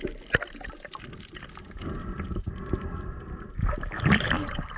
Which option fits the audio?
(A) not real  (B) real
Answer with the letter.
B